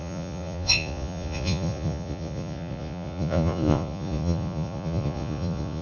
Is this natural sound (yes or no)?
no